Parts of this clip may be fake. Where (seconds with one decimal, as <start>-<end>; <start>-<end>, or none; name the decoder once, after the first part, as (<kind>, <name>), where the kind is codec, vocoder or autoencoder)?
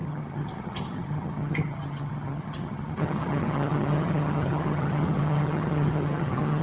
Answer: 0.0-6.6 (vocoder, HiFi-GAN)